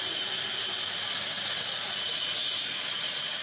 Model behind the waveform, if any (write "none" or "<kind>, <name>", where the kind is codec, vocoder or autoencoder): none